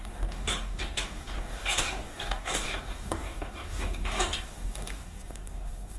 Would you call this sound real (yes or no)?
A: no